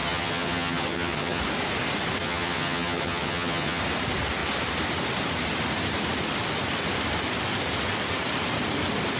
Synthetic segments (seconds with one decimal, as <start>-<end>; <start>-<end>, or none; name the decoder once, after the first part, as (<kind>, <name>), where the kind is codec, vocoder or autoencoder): 0.0-1.4 (vocoder, HiFi-GAN); 2.2-3.8